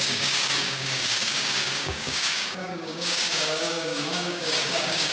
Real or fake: fake